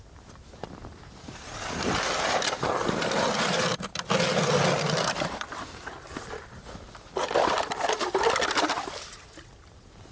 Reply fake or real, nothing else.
real